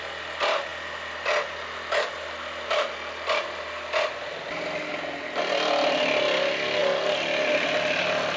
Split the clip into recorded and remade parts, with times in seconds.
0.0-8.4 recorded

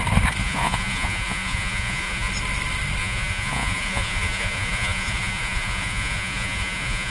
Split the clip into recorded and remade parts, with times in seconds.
0.0-0.4 recorded; 0.4-2.3 remade; 2.3-3.0 recorded; 3.0-7.1 remade

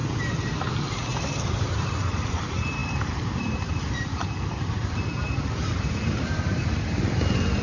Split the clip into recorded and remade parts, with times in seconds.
0.0-7.6 remade

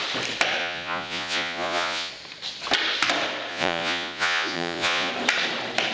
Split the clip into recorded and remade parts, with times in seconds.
0.0-0.6 recorded; 0.6-2.1 remade; 2.1-3.5 recorded; 3.5-5.1 remade; 5.1-5.9 recorded

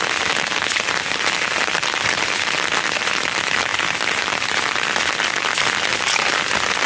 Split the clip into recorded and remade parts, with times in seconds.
0.0-6.9 recorded

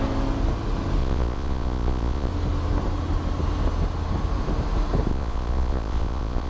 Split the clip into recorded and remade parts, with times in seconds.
0.0-1.0 recorded; 1.0-2.3 remade; 2.3-5.1 recorded; 5.1-6.5 remade

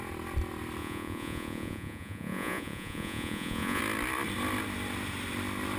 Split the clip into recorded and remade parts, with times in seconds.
0.0-0.8 recorded; 0.8-3.8 remade; 3.8-5.8 recorded

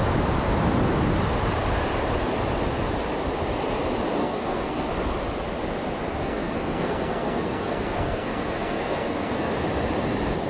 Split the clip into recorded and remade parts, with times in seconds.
0.0-4.2 recorded; 4.2-4.9 remade; 4.9-6.2 recorded; 6.2-9.5 remade; 9.5-10.5 recorded